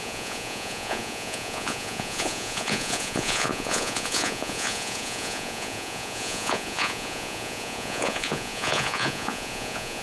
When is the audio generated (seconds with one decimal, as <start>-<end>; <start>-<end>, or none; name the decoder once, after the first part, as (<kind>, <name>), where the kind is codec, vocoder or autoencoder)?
0.0-10.0 (vocoder, Vocos)